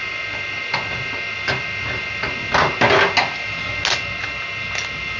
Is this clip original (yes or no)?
yes